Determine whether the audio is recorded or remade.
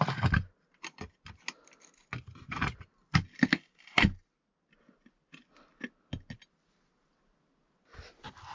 recorded